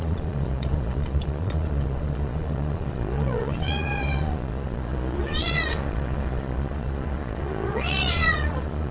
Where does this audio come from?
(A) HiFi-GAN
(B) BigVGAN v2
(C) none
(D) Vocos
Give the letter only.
D